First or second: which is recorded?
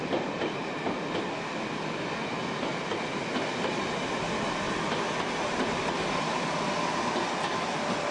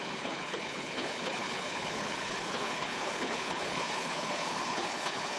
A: first